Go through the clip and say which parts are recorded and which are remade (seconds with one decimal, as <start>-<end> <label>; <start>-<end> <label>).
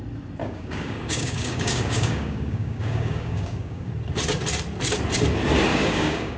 0.0-0.4 recorded; 0.4-3.9 remade; 3.9-5.7 recorded; 5.7-6.4 remade